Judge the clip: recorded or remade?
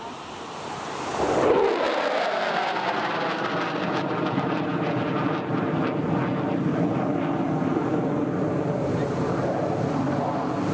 recorded